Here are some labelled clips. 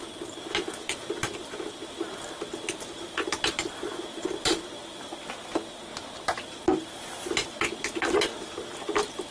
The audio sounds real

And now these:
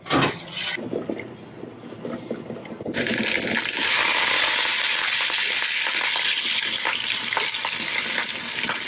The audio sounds real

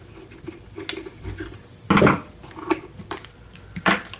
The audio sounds real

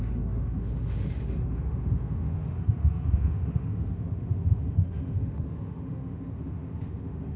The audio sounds fake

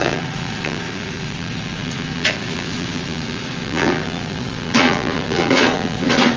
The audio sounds fake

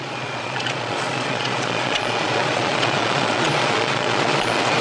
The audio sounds fake